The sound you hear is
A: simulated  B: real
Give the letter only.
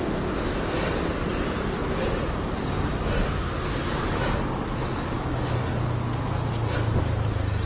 B